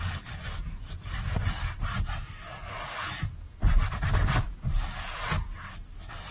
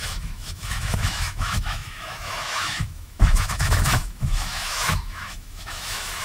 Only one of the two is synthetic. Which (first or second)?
second